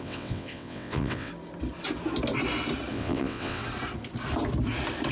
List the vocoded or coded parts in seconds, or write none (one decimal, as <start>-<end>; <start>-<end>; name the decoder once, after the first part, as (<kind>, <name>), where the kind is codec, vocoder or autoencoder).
0.0-1.3 (vocoder, WaveNeXt); 2.9-3.6